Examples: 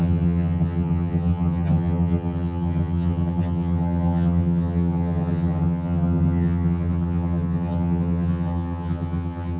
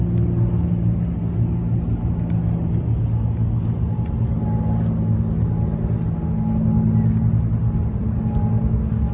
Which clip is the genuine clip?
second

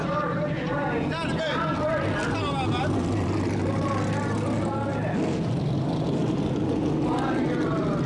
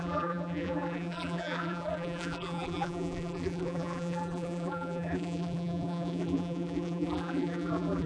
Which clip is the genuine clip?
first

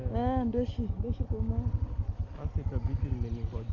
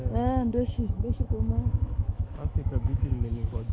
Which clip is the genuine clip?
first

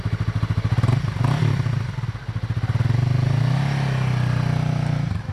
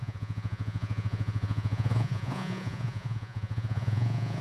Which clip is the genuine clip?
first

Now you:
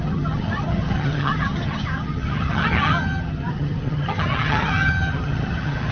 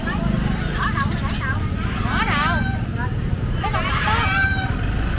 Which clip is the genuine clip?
second